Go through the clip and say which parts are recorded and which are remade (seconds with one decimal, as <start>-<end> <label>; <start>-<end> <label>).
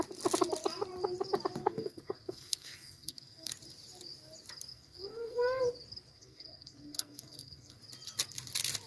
0.0-1.6 recorded; 1.6-3.5 remade; 3.5-4.7 recorded; 4.7-5.6 remade; 5.6-6.1 recorded; 6.1-7.8 remade; 7.8-8.9 recorded